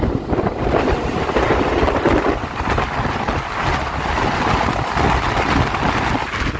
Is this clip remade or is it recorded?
recorded